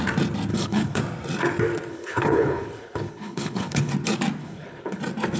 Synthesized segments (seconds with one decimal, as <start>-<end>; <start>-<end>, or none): 0.5-1.0; 1.9-3.9; 4.4-5.0